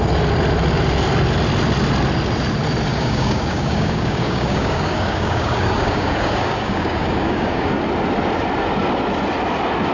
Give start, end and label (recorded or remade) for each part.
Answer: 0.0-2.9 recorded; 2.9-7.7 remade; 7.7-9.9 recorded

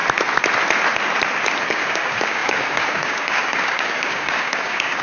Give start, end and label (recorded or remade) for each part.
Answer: 0.0-1.6 recorded; 1.6-5.0 remade

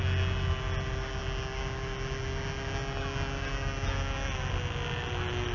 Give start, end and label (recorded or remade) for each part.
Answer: 0.0-5.5 recorded

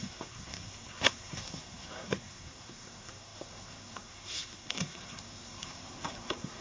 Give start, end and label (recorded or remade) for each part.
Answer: 0.0-6.6 remade

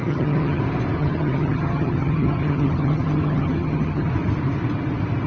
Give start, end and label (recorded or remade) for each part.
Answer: 0.0-0.6 remade; 0.6-1.0 recorded; 1.0-4.1 remade; 4.1-5.3 recorded

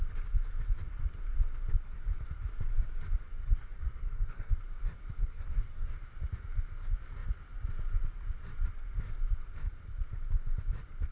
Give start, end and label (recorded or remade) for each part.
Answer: 0.0-3.4 recorded; 3.4-4.5 remade; 4.5-5.2 recorded; 5.2-5.9 remade; 5.9-11.1 recorded